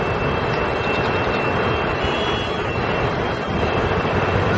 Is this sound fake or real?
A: real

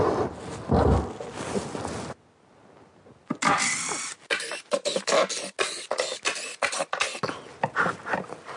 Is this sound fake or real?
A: real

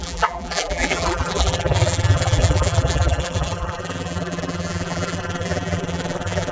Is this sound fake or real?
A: fake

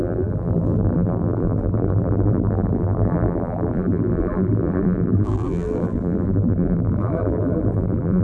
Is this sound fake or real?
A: fake